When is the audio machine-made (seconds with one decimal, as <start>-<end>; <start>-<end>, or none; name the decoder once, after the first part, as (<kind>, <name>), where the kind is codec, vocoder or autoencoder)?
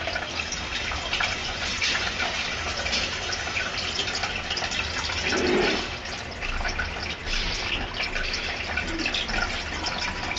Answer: 1.4-2.2 (vocoder, Vocos)